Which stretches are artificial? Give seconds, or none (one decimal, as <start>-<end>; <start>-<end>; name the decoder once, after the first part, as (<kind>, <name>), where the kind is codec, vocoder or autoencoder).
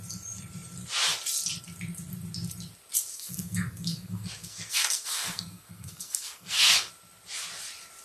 3.1-6.9 (codec, SNAC)